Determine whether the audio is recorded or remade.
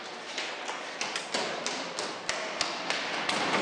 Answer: recorded